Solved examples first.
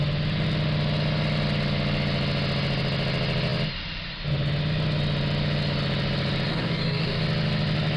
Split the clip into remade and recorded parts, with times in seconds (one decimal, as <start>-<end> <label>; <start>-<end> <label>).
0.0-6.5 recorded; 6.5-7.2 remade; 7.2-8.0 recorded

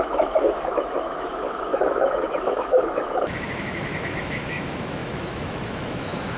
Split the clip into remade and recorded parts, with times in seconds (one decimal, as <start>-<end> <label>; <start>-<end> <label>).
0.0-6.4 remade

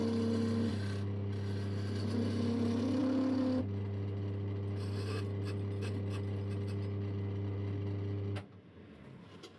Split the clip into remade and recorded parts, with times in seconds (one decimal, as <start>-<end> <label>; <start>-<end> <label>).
0.0-9.6 recorded

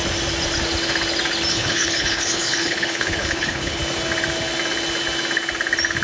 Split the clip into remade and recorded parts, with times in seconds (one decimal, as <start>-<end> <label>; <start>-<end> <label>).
0.0-1.5 recorded; 1.5-3.8 remade; 3.8-6.0 recorded

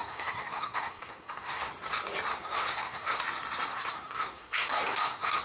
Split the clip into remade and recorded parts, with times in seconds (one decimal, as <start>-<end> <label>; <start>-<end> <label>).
0.0-1.7 remade; 1.7-2.3 recorded; 2.3-3.2 remade; 3.2-3.7 recorded; 3.7-5.4 remade

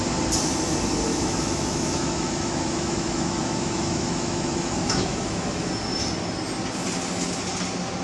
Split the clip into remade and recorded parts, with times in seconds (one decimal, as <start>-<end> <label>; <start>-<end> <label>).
0.0-1.1 recorded; 1.1-5.7 remade; 5.7-8.0 recorded

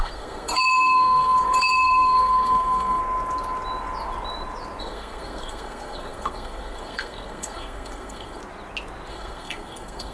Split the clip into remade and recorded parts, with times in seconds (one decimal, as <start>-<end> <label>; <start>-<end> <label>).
0.0-3.0 remade; 3.0-4.8 recorded; 4.8-8.4 remade; 8.4-9.1 recorded; 9.1-10.1 remade

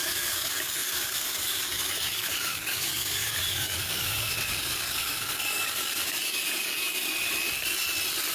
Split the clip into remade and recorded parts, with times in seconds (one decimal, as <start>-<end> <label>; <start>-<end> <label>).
0.0-7.0 remade; 7.0-8.3 recorded